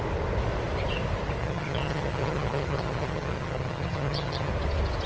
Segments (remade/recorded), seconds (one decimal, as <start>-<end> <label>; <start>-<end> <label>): 0.0-1.4 recorded; 1.4-4.5 remade; 4.5-5.1 recorded